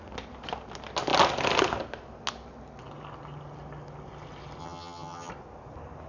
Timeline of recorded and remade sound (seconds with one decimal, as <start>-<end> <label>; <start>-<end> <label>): 0.0-4.6 recorded; 4.6-5.3 remade; 5.3-6.1 recorded